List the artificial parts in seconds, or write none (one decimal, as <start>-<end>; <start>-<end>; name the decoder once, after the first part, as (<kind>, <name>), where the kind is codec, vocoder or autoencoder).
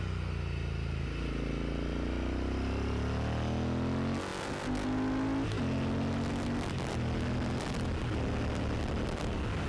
none